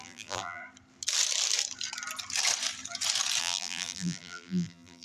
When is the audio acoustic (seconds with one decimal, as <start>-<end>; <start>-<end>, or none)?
0.6-3.4